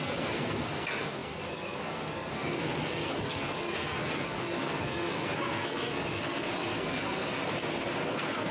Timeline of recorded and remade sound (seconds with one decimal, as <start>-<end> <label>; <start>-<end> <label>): 0.0-7.4 remade; 7.4-8.1 recorded; 8.1-8.5 remade